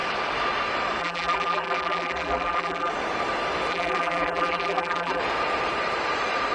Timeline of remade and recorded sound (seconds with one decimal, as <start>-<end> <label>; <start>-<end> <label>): 0.0-1.0 recorded; 1.0-2.9 remade; 2.9-3.7 recorded; 3.7-5.2 remade; 5.2-6.5 recorded